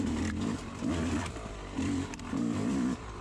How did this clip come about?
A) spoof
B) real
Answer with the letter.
A